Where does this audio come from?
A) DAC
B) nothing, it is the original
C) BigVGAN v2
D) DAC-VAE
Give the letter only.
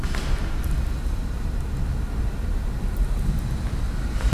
B